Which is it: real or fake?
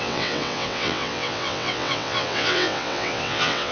fake